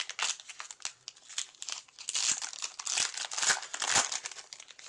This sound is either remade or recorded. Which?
recorded